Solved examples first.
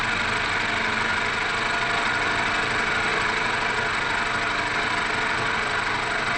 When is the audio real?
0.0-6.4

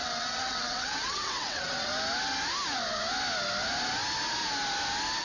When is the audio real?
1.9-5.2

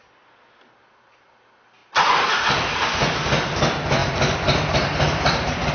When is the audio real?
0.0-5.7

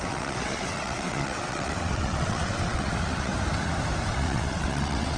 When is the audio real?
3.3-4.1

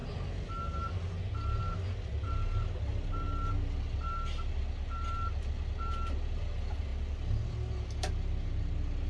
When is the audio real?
0.0-9.1

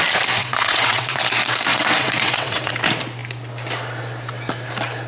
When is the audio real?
0.0-0.4; 1.2-1.7; 2.7-5.1

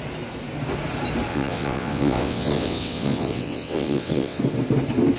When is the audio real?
0.0-1.3; 4.4-5.2

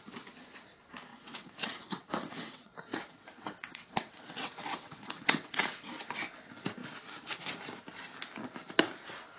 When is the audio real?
0.0-1.1; 5.9-9.4